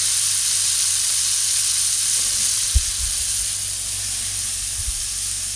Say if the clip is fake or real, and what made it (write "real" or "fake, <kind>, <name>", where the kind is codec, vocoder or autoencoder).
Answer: real